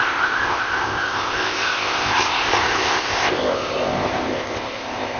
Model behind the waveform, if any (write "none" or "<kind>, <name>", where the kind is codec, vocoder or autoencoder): codec, ZipCodec